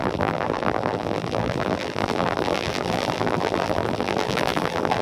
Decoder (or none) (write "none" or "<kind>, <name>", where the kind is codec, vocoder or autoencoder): vocoder, BigVGAN v2